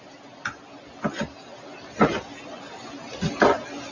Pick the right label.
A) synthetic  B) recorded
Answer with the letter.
B